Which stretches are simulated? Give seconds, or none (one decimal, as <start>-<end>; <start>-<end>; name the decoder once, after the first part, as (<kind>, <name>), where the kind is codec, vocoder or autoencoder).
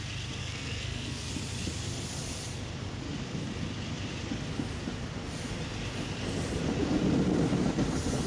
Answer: 0.4-1.3 (codec, SNAC)